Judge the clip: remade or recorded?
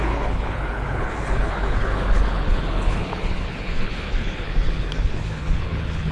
remade